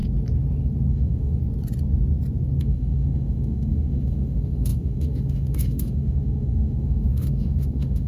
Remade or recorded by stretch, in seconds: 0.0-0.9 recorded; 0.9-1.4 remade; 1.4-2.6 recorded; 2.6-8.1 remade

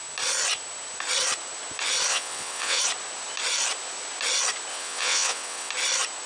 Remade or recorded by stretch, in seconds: 0.0-2.1 recorded; 2.1-2.8 remade; 2.8-4.7 recorded; 4.7-5.7 remade; 5.7-6.3 recorded

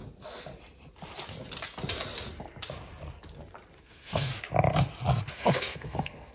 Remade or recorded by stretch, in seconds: 0.0-3.8 recorded; 3.8-4.3 remade; 4.3-5.3 recorded; 5.3-6.3 remade

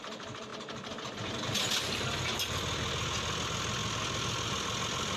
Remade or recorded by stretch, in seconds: 0.0-5.2 recorded